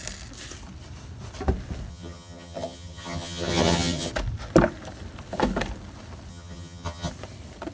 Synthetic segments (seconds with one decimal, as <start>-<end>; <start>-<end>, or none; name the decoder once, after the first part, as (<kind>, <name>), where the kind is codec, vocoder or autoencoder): 1.9-4.1 (vocoder, HiFi-GAN); 6.3-7.1